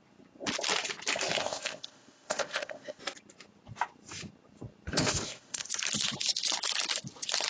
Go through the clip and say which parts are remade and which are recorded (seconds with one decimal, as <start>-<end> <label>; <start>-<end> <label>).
0.0-1.4 recorded; 1.4-3.0 remade; 3.0-4.9 recorded; 4.9-5.7 remade; 5.7-7.5 recorded